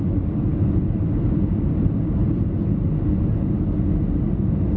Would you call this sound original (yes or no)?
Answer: yes